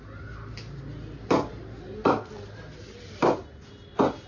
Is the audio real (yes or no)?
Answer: yes